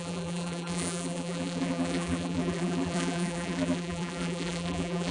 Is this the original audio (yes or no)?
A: no